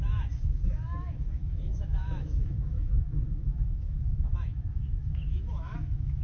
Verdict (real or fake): fake